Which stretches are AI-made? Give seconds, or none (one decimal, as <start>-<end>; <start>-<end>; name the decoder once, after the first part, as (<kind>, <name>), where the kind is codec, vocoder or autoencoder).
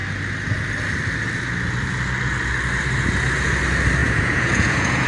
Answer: 4.0-5.1 (vocoder, Vocos)